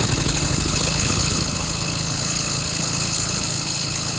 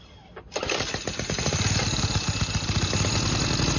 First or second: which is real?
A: second